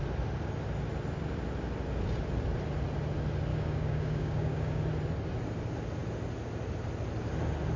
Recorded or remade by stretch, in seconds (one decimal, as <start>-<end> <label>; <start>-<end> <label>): 0.0-3.5 recorded; 3.5-4.8 remade; 4.8-7.8 recorded